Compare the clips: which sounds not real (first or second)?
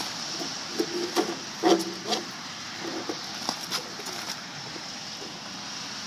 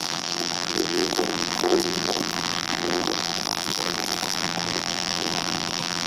second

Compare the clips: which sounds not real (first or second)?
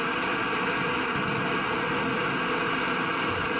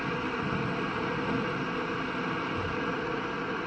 second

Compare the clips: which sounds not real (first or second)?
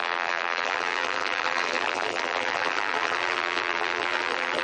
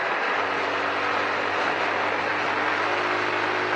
first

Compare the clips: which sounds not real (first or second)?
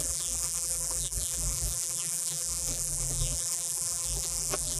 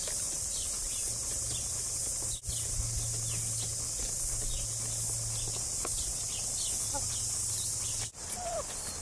first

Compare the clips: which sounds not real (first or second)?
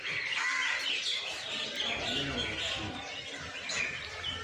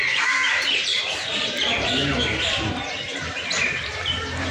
second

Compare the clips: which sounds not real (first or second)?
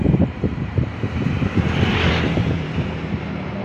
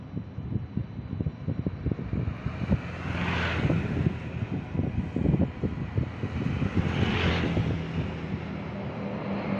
first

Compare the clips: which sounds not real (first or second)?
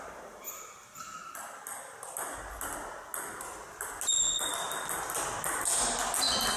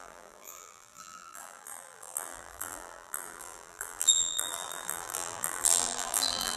second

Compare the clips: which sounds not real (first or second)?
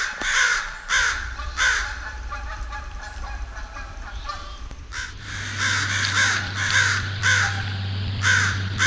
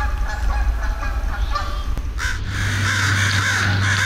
first